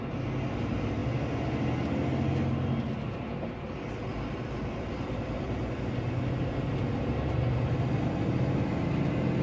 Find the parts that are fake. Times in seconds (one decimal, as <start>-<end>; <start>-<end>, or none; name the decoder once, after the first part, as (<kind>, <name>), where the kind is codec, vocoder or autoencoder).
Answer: 4.1-6.5 (vocoder, BigVGAN v2)